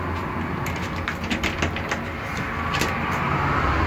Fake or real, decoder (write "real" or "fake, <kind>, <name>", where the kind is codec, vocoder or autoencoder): real